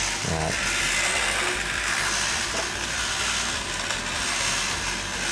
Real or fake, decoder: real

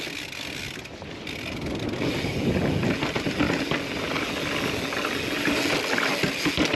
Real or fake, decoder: real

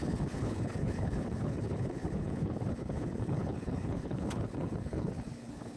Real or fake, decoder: fake, codec, HILCodec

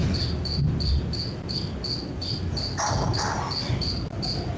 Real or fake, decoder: real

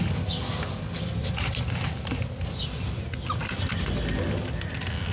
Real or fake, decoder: real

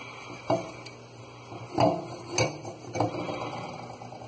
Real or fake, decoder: real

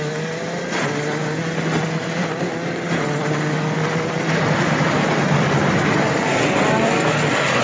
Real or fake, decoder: real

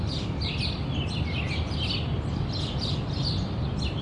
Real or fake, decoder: real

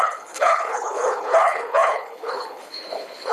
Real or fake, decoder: fake, codec, HILCodec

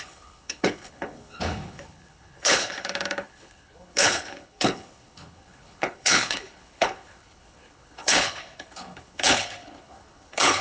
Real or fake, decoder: fake, codec, HILCodec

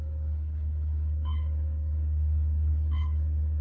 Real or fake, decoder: fake, codec, HILCodec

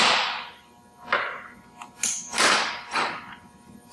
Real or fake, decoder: real